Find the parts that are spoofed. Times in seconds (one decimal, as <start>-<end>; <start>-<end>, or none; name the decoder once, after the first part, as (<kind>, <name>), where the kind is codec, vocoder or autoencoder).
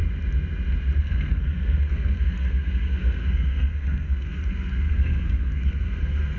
1.0-6.4 (codec, SNAC)